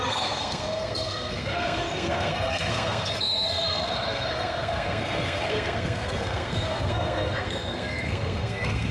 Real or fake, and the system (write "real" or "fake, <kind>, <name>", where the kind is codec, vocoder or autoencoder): fake, codec, SNAC